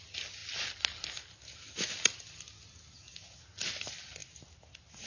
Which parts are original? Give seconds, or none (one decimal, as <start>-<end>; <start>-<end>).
0.0-5.1